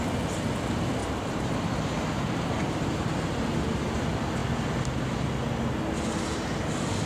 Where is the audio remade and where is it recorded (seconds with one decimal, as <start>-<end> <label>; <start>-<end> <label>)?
0.0-1.0 recorded; 1.0-3.6 remade; 3.6-7.1 recorded